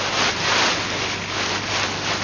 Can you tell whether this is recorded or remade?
recorded